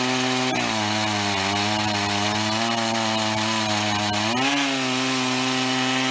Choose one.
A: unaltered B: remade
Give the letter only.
A